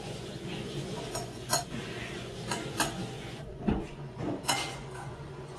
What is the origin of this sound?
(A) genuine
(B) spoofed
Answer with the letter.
B